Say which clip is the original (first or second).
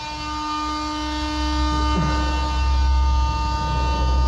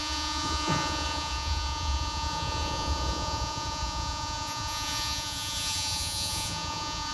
first